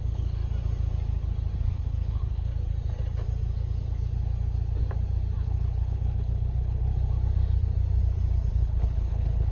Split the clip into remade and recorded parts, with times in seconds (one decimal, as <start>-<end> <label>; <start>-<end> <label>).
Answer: 0.0-0.4 remade; 0.4-1.7 recorded; 1.7-2.5 remade; 2.5-5.4 recorded; 5.4-6.9 remade; 6.9-8.5 recorded; 8.5-9.5 remade